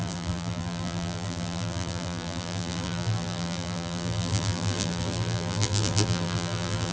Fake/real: fake